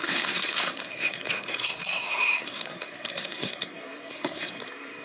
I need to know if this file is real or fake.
fake